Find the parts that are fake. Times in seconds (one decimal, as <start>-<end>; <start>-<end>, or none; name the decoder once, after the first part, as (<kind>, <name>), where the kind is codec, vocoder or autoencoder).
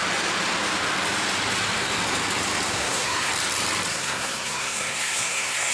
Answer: 2.7-3.3 (codec, SNAC); 3.9-5.7